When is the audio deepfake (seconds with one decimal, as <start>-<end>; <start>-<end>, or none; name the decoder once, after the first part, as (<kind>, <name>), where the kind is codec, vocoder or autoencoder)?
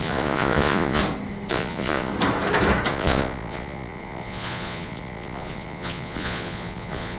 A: 0.0-1.0 (vocoder, Vocos); 1.5-2.1; 2.9-7.2